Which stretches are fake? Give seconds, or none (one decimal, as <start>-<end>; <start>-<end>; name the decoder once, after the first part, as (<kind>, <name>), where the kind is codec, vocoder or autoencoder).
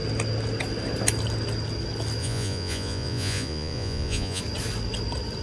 2.2-4.4 (vocoder, Vocos)